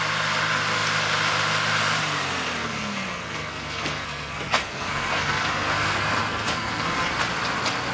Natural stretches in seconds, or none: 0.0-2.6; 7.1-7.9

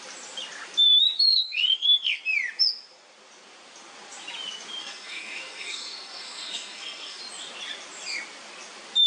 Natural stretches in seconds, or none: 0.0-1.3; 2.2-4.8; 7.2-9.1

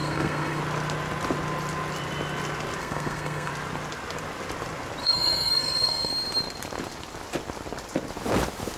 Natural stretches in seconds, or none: 0.6-2.8; 3.5-5.0; 6.1-8.8